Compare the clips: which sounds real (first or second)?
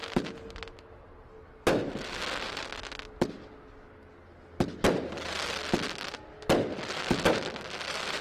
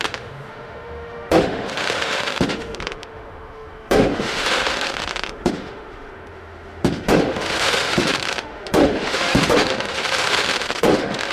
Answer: first